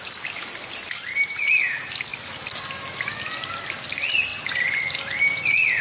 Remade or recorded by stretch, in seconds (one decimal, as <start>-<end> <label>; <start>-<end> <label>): 0.0-2.1 recorded; 2.1-2.7 remade; 2.7-5.8 recorded